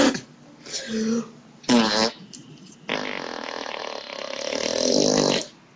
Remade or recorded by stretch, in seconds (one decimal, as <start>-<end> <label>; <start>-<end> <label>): 0.0-5.8 recorded